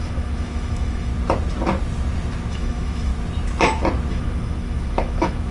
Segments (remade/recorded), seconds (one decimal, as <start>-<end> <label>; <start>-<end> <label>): 0.0-1.1 remade; 1.1-2.5 recorded; 2.5-3.1 remade; 3.1-4.1 recorded; 4.1-5.5 remade